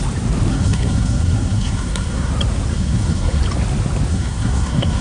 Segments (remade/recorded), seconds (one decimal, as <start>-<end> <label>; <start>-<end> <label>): 0.0-0.5 recorded; 0.5-2.3 remade; 2.3-2.7 recorded; 2.7-3.4 remade; 3.4-4.1 recorded; 4.1-5.0 remade

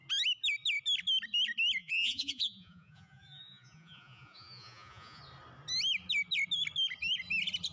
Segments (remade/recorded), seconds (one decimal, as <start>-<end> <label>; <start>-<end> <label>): 0.0-1.8 recorded; 1.8-5.2 remade; 5.2-7.7 recorded

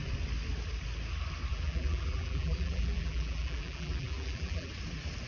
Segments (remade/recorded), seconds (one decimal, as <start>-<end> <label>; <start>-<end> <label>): 0.0-1.5 recorded; 1.5-4.7 remade; 4.7-5.3 recorded

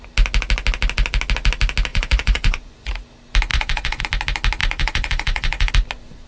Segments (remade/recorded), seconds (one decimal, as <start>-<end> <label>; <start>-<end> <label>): 0.0-1.9 recorded; 1.9-2.9 remade; 2.9-3.5 recorded; 3.5-4.0 remade; 4.0-4.6 recorded; 4.6-5.7 remade; 5.7-6.3 recorded